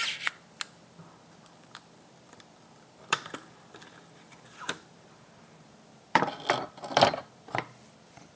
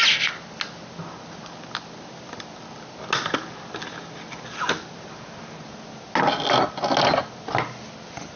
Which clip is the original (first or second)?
second